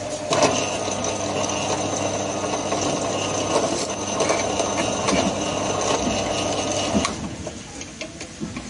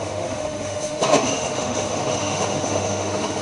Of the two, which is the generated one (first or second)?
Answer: second